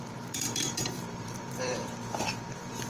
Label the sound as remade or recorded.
remade